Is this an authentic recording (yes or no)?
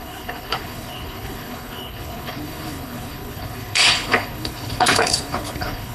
no